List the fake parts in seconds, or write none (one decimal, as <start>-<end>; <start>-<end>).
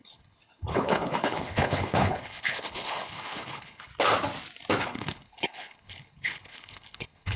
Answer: 0.0-3.9; 4.8-7.4